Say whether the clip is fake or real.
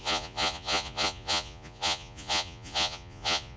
fake